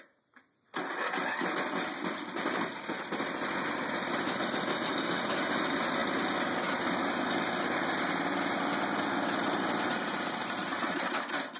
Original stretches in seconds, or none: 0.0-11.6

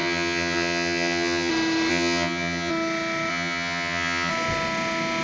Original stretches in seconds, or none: 1.5-1.9; 2.7-3.3; 4.3-5.2

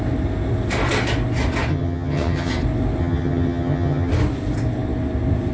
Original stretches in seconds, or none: 0.0-1.7; 2.5-3.0; 4.1-5.5

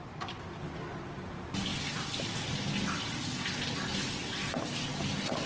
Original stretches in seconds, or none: 0.0-5.5

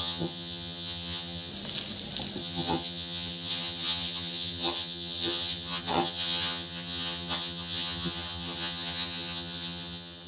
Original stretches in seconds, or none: 1.5-2.4

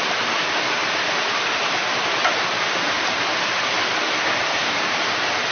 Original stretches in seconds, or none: 0.0-5.5

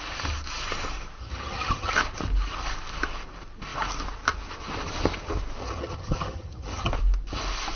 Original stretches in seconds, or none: 0.0-1.2; 1.9-5.6; 6.9-7.8